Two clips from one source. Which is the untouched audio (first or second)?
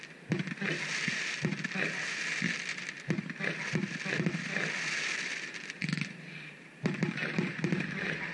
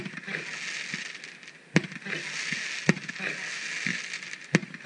second